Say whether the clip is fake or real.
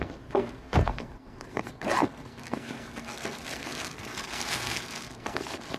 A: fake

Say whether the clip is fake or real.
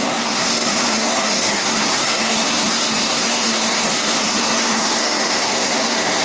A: fake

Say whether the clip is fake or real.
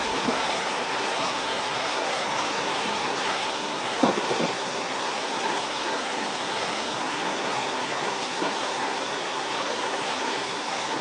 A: fake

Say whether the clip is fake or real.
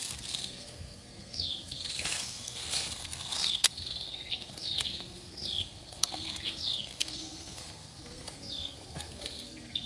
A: fake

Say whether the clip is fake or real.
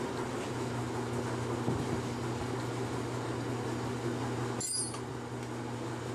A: real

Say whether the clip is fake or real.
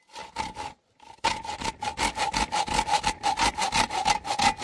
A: real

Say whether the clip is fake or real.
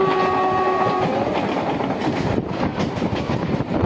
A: real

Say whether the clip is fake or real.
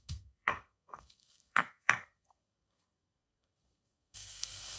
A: fake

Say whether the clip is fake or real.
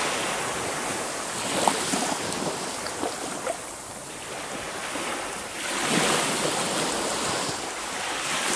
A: real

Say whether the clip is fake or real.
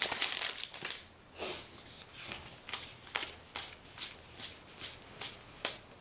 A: real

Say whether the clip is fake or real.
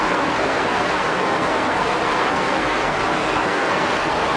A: fake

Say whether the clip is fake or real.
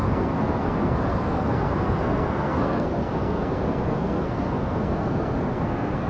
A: fake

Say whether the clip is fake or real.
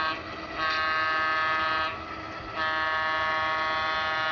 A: real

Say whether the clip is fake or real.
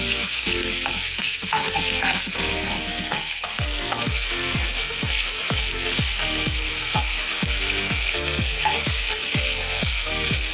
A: fake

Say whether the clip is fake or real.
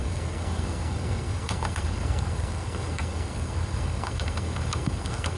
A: fake